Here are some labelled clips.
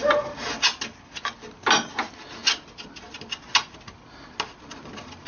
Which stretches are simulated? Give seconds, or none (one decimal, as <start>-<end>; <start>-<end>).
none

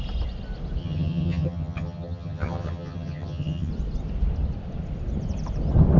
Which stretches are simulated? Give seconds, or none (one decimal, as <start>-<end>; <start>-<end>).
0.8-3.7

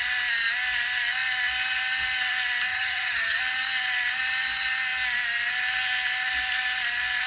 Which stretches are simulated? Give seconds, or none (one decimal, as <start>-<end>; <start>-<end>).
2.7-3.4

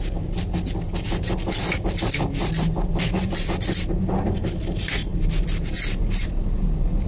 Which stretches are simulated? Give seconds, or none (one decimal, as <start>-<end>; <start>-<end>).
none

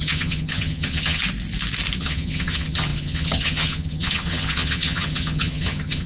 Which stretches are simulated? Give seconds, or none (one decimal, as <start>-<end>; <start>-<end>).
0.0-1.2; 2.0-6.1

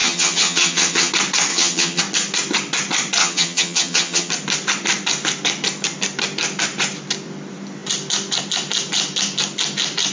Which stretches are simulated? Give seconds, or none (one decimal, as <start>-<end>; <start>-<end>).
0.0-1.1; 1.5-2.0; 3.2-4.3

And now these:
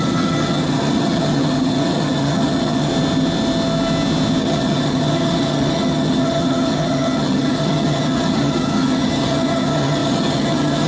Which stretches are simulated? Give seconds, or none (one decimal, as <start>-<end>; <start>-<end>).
0.0-2.9; 4.4-10.9